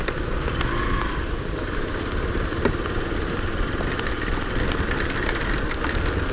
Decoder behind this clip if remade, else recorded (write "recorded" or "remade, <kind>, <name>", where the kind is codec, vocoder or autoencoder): recorded